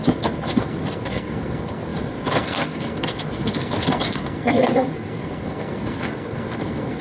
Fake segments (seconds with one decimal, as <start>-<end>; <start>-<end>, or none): 0.0-7.0